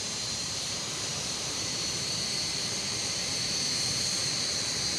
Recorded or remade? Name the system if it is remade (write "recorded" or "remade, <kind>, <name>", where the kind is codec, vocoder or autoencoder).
remade, vocoder, BigVGAN v2